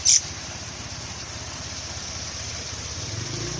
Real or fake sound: real